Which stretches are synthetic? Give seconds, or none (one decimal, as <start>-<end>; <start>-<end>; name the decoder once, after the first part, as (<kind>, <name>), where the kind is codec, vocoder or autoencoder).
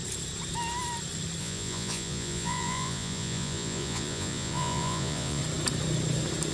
1.4-5.4 (vocoder, Vocos)